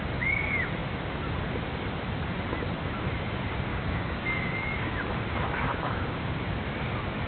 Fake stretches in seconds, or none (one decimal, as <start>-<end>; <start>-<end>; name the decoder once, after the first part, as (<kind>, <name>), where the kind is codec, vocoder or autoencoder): 3.7-4.9 (codec, DAC); 5.7-6.4